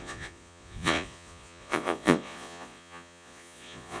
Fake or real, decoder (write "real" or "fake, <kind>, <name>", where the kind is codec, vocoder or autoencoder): fake, vocoder, Vocos